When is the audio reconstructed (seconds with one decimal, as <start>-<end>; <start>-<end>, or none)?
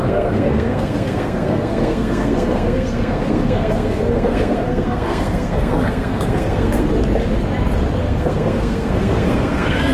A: 0.0-6.9; 8.0-9.9